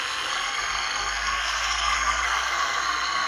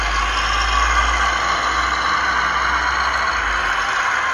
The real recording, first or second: second